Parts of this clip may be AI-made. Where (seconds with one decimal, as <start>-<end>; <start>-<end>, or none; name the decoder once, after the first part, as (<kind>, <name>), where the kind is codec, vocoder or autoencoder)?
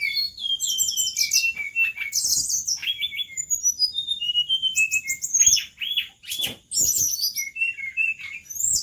2.8-3.5 (autoencoder, DAC-VAE)